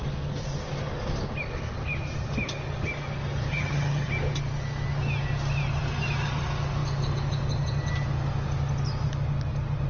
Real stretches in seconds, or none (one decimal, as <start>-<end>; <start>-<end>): 0.0-3.5; 4.1-9.9